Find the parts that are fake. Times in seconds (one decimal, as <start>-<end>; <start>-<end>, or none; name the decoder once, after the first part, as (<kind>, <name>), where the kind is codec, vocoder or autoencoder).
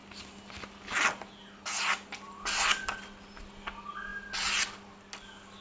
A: none